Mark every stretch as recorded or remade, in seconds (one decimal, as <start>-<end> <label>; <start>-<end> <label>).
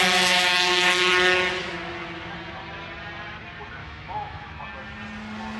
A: 0.0-3.8 recorded; 3.8-4.6 remade; 4.6-5.6 recorded